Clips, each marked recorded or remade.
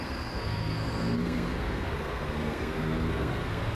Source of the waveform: remade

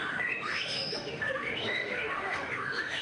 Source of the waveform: remade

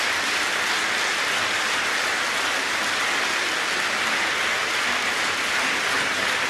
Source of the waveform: recorded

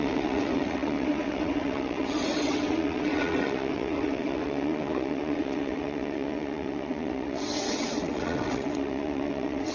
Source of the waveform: remade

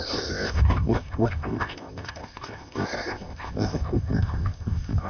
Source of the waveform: remade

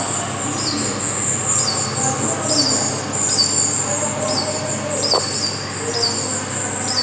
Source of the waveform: recorded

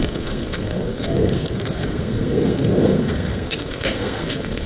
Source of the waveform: remade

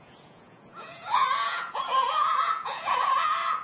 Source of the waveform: remade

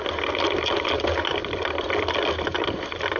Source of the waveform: recorded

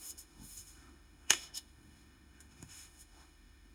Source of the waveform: remade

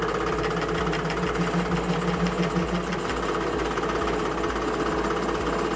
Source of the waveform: recorded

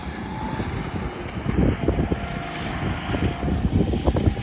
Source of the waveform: recorded